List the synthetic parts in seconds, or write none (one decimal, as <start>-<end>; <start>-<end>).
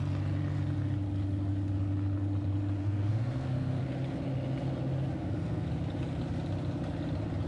2.8-3.8; 5.2-5.7